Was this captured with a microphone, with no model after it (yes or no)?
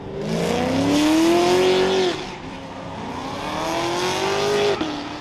yes